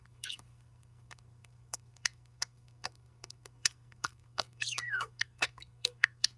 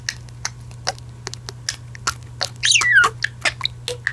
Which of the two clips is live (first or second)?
second